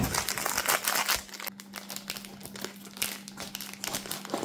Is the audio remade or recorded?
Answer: recorded